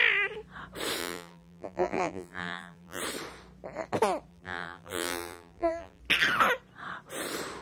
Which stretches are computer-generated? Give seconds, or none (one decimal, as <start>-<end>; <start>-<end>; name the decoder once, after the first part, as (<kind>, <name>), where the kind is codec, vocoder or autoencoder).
1.0-3.0 (vocoder, BigVGAN v2); 4.3-6.0

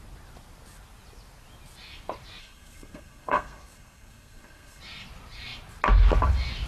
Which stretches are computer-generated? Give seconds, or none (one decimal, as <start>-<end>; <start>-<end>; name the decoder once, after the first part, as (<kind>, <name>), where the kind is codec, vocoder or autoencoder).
2.4-4.8 (codec, SNAC)

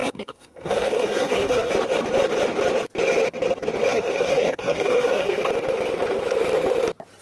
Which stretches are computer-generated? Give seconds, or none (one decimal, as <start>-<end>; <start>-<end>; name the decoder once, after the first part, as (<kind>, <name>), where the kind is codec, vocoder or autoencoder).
0.0-1.7 (codec, SNAC); 3.9-5.4

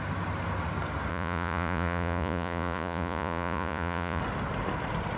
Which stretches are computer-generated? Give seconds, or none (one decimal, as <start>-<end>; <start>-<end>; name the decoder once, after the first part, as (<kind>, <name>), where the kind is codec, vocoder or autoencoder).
1.1-4.2 (vocoder, Vocos)